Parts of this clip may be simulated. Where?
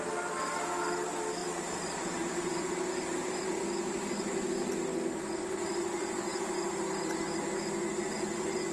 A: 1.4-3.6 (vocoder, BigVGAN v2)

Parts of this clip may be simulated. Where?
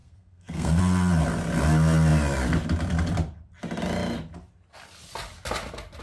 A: 0.0-0.8 (codec, SNAC)